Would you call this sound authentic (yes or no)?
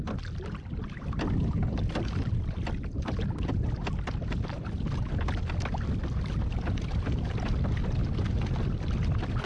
yes